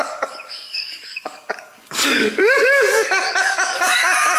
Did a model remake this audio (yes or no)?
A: yes